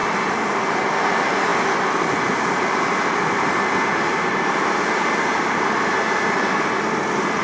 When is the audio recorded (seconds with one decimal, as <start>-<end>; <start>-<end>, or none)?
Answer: 0.0-7.4